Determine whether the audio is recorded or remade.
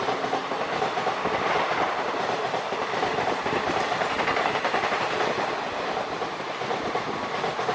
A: recorded